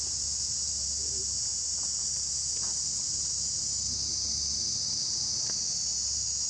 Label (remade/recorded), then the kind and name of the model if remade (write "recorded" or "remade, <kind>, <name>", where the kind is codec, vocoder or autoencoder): recorded